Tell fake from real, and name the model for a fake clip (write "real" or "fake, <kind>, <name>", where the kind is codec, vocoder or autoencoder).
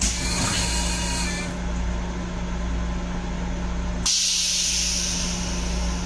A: real